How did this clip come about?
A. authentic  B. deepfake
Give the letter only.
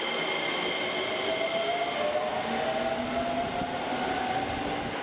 A